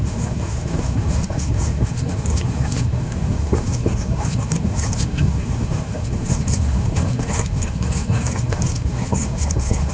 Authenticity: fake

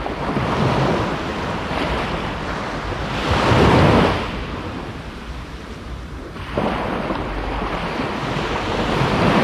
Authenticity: real